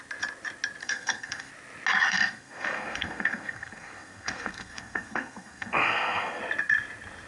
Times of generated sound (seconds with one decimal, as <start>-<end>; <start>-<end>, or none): 0.8-1.5; 2.1-6.4